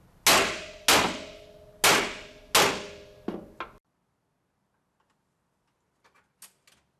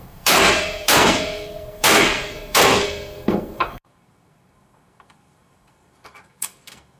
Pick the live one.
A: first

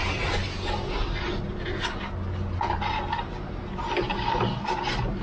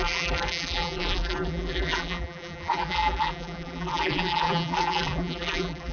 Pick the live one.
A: first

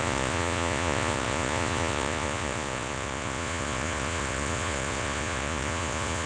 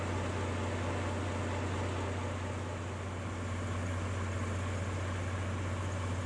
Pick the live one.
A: second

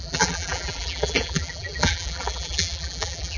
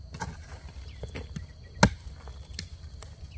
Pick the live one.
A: second